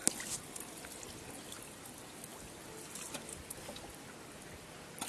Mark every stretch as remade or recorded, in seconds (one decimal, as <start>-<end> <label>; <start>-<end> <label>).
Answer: 0.0-5.1 recorded